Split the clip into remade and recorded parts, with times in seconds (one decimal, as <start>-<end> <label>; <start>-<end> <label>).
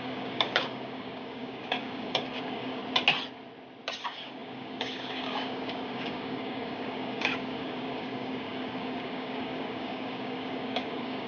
0.0-2.8 remade; 2.8-4.0 recorded; 4.0-11.3 remade